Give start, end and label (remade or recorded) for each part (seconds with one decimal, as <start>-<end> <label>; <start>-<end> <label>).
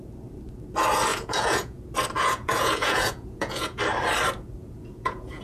0.0-1.1 recorded; 1.1-1.8 remade; 1.8-2.2 recorded; 2.2-3.8 remade; 3.8-4.6 recorded; 4.6-5.4 remade